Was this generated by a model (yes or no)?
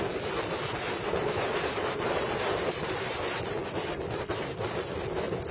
no